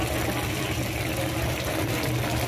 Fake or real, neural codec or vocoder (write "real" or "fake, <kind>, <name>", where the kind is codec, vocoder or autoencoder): real